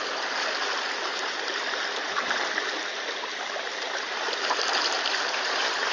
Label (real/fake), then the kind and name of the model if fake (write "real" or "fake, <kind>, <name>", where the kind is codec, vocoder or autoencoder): real